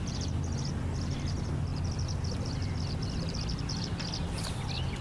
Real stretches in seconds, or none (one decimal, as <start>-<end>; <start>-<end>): 0.0-5.0